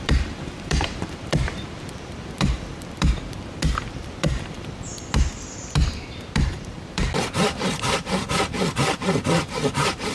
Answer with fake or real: fake